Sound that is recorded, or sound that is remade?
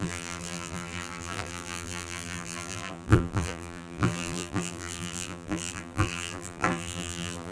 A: remade